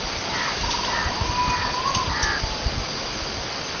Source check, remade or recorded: recorded